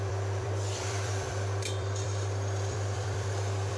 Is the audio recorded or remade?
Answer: remade